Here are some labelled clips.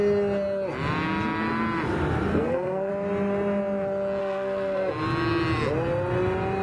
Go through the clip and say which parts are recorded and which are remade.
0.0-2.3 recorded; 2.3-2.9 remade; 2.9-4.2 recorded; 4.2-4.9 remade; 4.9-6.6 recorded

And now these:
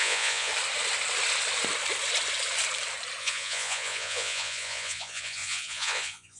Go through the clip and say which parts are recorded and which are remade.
0.0-0.5 remade; 0.5-3.2 recorded; 3.2-6.4 remade